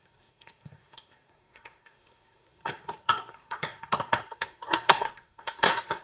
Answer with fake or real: fake